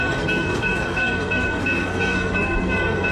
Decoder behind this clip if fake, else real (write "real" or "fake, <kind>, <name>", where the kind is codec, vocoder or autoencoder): fake, codec, SNAC